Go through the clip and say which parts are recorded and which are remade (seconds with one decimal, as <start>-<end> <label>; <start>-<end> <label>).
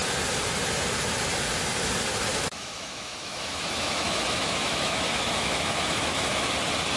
0.0-2.3 recorded; 2.3-6.5 remade; 6.5-7.0 recorded